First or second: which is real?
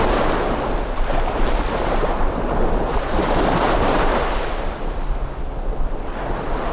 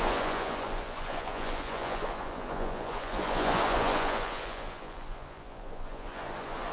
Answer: first